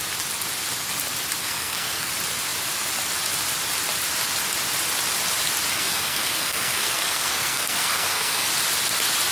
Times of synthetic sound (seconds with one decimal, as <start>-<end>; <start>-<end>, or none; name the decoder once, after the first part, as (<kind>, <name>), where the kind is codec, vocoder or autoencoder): 1.4-2.1 (codec, SNAC); 5.7-8.5